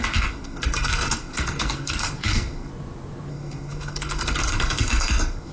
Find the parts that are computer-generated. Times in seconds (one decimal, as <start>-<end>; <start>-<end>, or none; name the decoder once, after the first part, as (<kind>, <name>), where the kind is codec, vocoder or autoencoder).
0.0-2.7 (codec, SNAC); 3.3-5.5